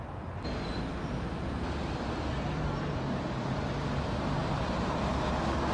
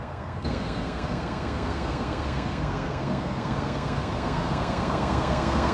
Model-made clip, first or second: second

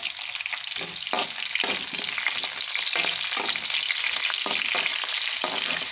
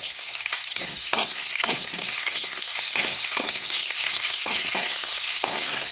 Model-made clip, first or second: second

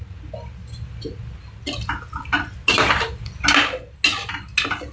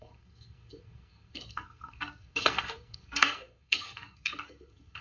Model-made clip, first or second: second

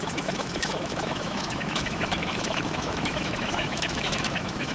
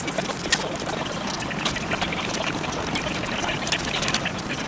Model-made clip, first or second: first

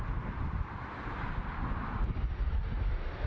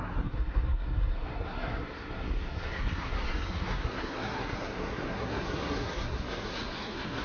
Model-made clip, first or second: second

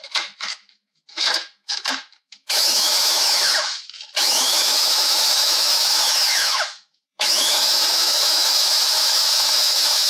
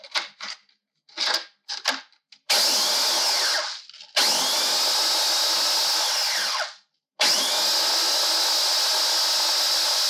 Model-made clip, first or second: first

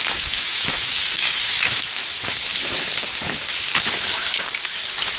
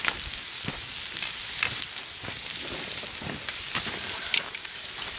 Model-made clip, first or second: first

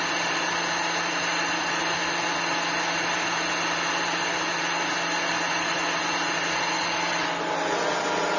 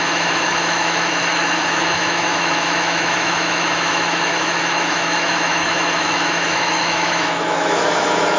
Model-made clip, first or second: second